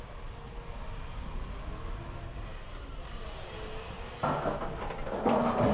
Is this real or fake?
real